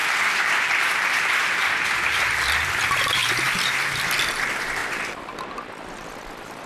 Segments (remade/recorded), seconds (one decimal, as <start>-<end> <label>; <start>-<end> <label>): 0.0-1.7 remade; 1.7-4.8 recorded; 4.8-5.4 remade; 5.4-6.7 recorded